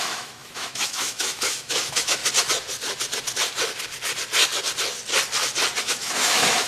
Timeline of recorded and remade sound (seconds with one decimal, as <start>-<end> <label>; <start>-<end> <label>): 0.0-2.2 remade; 2.2-5.8 recorded; 5.8-6.7 remade